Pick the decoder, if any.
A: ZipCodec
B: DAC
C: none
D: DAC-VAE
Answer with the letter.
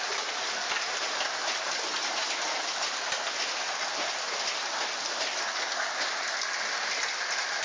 C